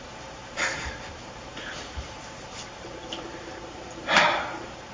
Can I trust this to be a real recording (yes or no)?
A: no